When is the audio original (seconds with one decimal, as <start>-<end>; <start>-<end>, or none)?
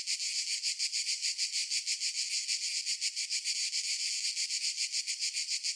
0.0-5.8